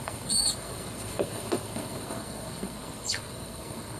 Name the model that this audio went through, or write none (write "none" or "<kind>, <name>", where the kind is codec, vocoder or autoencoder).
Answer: codec, SNAC